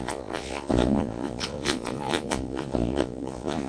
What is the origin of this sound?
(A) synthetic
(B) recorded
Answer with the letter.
A